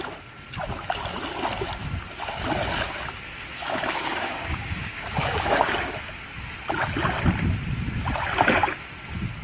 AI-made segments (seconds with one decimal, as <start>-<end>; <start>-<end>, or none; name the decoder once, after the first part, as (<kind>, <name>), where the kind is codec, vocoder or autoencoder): 3.5-5.9 (codec, DAC)